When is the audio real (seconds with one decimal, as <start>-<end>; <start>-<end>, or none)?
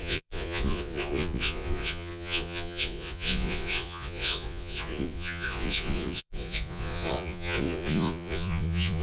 none